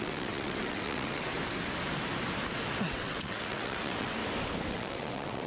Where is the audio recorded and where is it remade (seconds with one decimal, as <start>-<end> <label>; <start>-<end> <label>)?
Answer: 0.0-1.3 remade; 1.3-2.8 recorded; 2.8-4.2 remade; 4.2-4.7 recorded; 4.7-5.5 remade